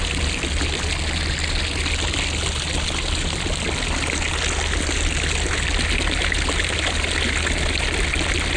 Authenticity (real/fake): real